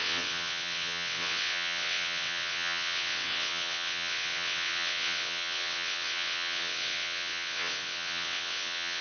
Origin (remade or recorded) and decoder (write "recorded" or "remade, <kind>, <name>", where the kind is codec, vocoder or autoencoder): remade, vocoder, WaveNeXt